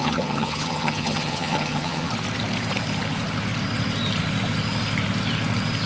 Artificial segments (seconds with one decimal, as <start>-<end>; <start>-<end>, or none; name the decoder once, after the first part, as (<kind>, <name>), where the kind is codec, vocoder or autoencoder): 0.0-2.1 (vocoder, HiFi-GAN)